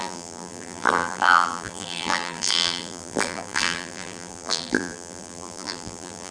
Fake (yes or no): yes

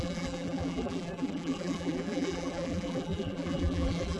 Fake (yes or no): yes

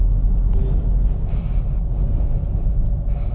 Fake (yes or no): no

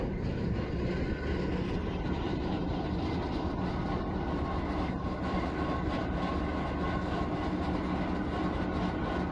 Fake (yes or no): no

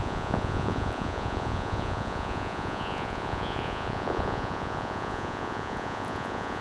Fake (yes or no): yes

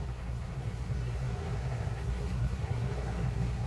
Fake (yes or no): yes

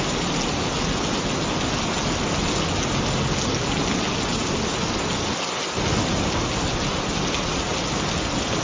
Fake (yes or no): no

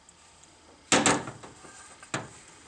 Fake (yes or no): no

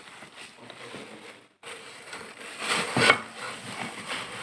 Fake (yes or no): no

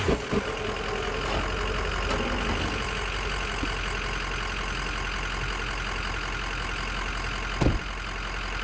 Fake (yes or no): no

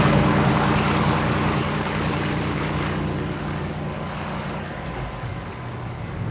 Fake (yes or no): yes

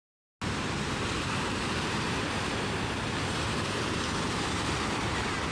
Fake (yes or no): no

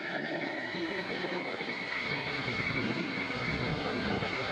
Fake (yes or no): yes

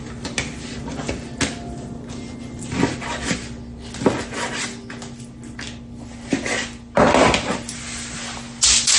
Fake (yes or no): no